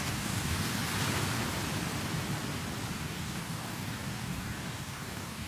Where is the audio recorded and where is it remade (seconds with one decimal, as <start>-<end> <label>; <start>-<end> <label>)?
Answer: 0.0-0.8 remade; 0.8-2.9 recorded; 2.9-5.5 remade